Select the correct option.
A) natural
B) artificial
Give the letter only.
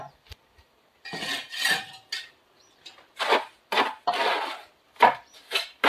A